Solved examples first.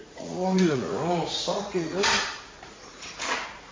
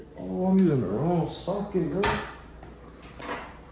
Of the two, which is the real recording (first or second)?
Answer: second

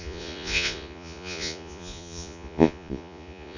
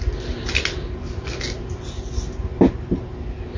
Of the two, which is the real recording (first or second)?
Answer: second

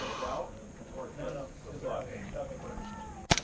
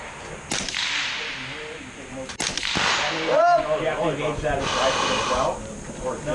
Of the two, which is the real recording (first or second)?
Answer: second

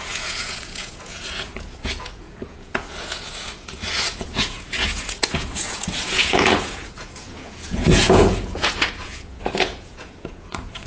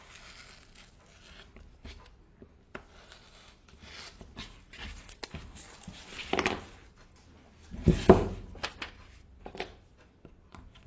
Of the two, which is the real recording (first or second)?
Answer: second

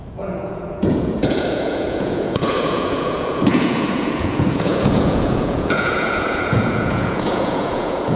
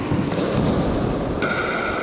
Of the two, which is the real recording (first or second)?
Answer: second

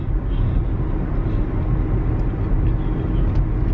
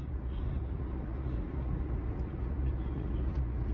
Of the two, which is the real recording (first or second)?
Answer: first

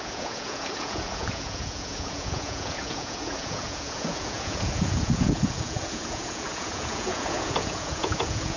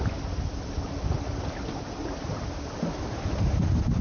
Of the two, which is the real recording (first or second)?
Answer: second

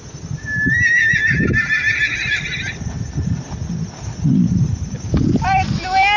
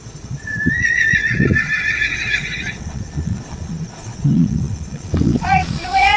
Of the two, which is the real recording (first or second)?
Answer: first